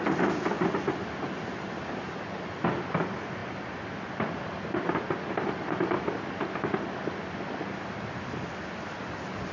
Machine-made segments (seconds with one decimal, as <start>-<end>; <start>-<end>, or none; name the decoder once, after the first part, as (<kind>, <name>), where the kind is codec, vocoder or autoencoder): none